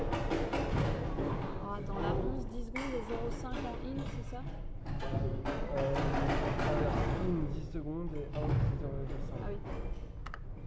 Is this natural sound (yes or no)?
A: yes